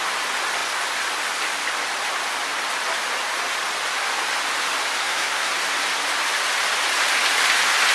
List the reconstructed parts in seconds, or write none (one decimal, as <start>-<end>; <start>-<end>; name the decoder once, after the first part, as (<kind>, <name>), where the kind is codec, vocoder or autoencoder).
5.0-5.5 (codec, SNAC)